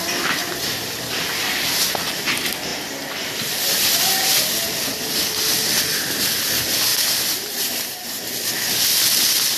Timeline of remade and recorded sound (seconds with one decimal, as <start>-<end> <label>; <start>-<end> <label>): 0.0-0.4 recorded; 0.4-1.9 remade; 1.9-6.9 recorded; 6.9-8.3 remade; 8.3-9.6 recorded